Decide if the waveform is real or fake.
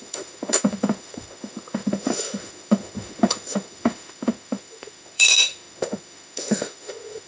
fake